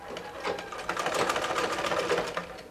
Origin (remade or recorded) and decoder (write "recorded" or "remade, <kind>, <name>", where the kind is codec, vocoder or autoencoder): recorded